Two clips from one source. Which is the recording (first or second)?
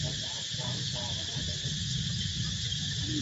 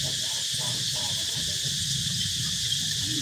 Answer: first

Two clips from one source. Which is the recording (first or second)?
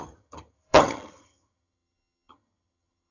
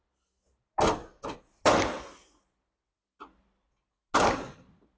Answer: second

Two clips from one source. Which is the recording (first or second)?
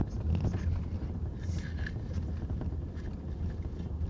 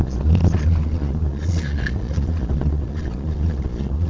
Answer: first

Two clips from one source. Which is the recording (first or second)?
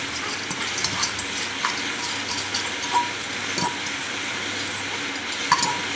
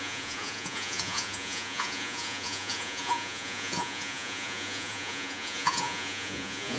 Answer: first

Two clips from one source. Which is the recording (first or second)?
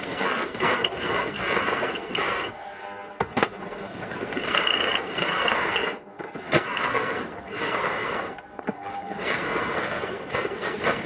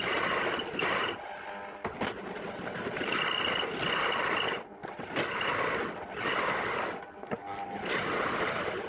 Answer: second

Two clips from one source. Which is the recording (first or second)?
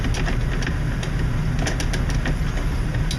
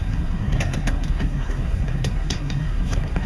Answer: first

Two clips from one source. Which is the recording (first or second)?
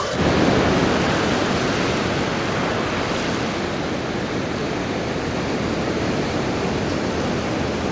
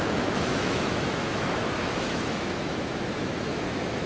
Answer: first